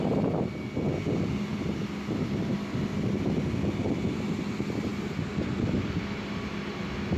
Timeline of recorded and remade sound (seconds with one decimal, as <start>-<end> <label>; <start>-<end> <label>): 0.0-1.5 recorded; 1.5-2.8 remade; 2.8-4.9 recorded; 4.9-6.7 remade; 6.7-7.2 recorded

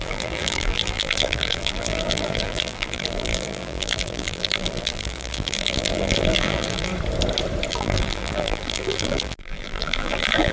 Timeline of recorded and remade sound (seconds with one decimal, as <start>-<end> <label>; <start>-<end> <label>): 0.0-6.9 remade; 6.9-7.7 recorded; 7.7-10.5 remade

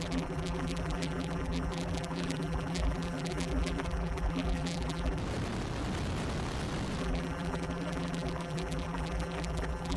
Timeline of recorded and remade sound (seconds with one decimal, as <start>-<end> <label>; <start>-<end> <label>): 0.0-5.2 remade; 5.2-7.0 recorded; 7.0-10.0 remade

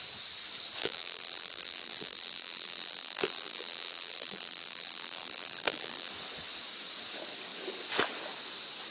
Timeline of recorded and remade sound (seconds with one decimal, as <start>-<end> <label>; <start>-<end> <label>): 0.0-0.8 recorded; 0.8-6.1 remade; 6.1-8.9 recorded